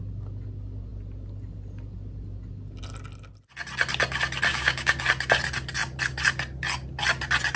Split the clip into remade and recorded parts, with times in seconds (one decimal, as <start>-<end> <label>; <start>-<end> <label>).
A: 0.0-4.5 recorded; 4.5-5.0 remade; 5.0-7.6 recorded